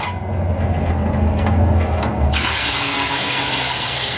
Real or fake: fake